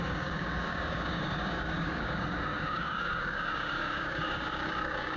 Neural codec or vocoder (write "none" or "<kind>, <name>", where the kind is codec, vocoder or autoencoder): codec, DAC